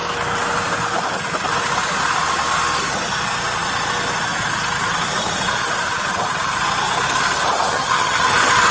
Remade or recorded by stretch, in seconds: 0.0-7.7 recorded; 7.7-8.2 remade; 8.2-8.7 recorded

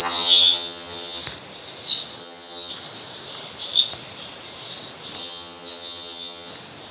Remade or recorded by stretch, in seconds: 0.0-1.2 remade; 1.2-2.2 recorded; 2.2-2.7 remade; 2.7-5.2 recorded; 5.2-6.5 remade; 6.5-6.9 recorded

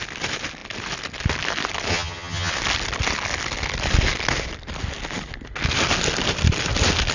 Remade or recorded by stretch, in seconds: 0.0-1.9 recorded; 1.9-2.5 remade; 2.5-7.1 recorded

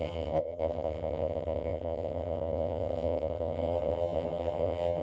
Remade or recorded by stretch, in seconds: 0.0-5.0 remade

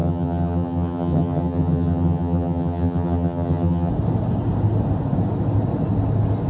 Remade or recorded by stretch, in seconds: 0.0-3.9 remade; 3.9-6.5 recorded

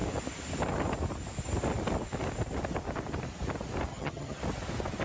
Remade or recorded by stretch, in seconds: 0.0-3.9 recorded; 3.9-4.4 remade; 4.4-5.0 recorded